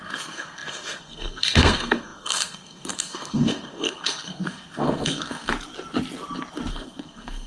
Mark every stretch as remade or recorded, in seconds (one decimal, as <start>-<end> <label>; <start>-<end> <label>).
0.0-5.5 remade; 5.5-6.7 recorded; 6.7-7.5 remade